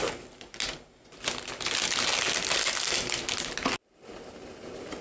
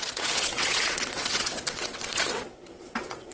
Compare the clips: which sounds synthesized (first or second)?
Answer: second